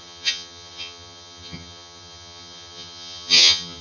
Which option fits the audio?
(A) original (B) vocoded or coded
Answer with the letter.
B